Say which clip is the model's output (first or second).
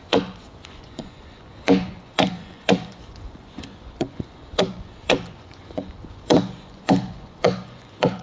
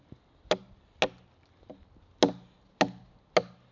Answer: first